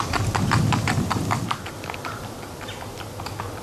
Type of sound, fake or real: real